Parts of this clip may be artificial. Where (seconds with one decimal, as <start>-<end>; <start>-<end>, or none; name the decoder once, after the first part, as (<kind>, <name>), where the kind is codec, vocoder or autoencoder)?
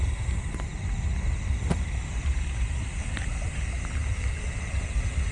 none